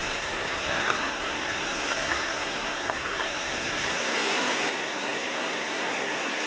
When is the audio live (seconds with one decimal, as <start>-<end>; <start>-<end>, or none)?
none